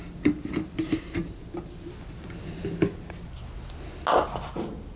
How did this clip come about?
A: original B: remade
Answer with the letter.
A